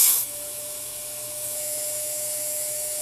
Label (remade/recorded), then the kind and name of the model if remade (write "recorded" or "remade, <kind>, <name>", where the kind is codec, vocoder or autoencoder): remade, autoencoder, DAC-VAE